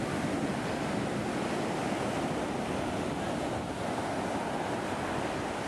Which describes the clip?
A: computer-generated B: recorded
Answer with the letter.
B